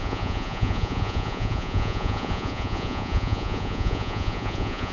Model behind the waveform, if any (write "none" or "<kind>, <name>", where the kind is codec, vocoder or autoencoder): vocoder, Vocos